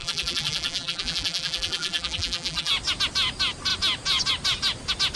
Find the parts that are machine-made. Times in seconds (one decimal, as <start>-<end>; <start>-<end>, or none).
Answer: 0.0-2.7